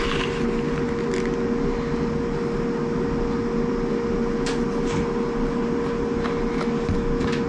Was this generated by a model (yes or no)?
no